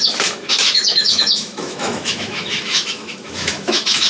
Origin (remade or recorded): remade